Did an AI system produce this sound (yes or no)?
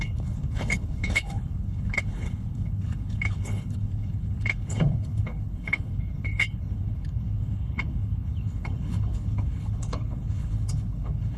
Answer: yes